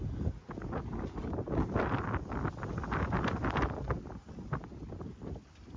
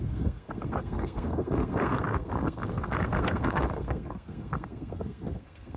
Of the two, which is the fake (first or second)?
second